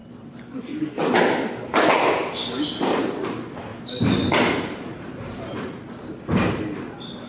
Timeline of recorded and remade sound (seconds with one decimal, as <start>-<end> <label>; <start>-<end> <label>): 0.0-0.9 remade; 0.9-3.7 recorded; 3.7-6.6 remade; 6.6-7.3 recorded